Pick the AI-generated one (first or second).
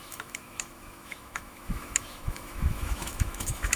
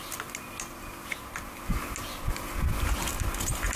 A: first